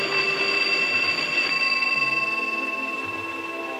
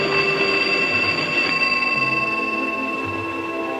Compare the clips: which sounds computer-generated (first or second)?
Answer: first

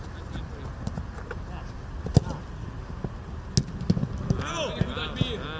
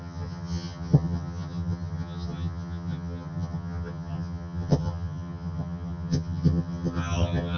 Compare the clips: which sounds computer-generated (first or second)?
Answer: second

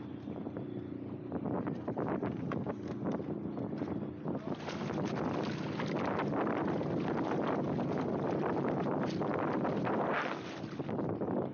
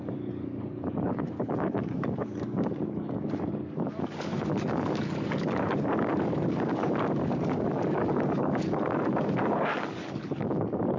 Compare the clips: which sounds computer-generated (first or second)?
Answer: second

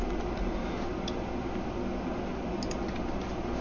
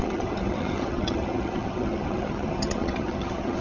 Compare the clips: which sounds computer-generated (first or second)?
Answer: second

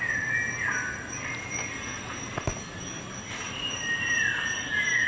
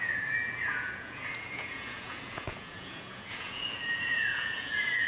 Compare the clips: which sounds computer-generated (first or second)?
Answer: second